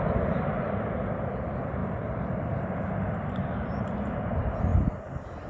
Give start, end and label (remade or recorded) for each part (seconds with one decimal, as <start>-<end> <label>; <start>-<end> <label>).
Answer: 0.0-1.8 recorded; 1.8-3.9 remade; 3.9-5.5 recorded

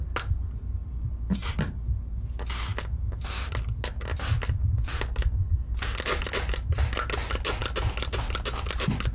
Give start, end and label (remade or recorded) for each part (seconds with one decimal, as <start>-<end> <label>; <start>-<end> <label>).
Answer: 0.0-9.1 recorded

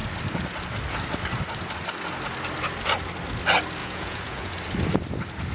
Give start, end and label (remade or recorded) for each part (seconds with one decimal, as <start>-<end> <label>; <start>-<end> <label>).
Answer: 0.0-3.8 recorded; 3.8-4.5 remade; 4.5-5.5 recorded

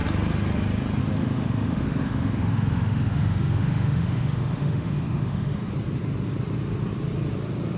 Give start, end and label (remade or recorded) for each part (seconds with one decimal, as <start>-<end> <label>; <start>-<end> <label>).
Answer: 0.0-1.0 recorded; 1.0-5.7 remade; 5.7-7.8 recorded

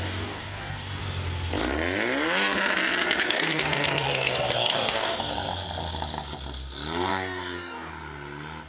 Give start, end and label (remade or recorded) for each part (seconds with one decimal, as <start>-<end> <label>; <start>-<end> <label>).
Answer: 0.0-1.0 remade; 1.0-3.2 recorded; 3.2-5.3 remade; 5.3-7.1 recorded; 7.1-7.9 remade; 7.9-8.7 recorded

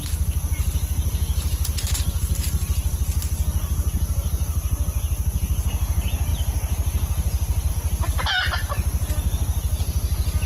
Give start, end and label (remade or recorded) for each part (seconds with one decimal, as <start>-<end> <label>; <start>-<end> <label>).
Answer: 0.0-10.5 recorded

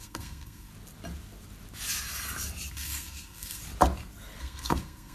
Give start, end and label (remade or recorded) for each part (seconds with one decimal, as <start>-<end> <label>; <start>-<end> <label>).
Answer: 0.0-0.7 remade; 0.7-2.7 recorded; 2.7-3.6 remade; 3.6-4.4 recorded; 4.4-5.1 remade